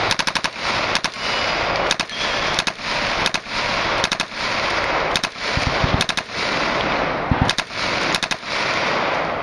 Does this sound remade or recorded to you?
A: recorded